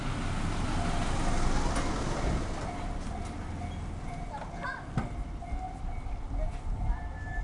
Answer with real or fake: real